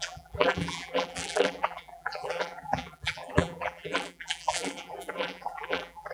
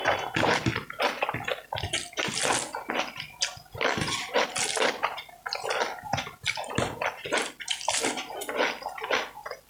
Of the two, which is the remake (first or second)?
first